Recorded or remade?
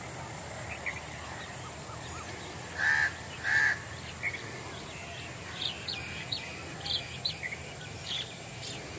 recorded